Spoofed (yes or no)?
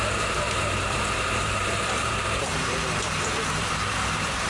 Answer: yes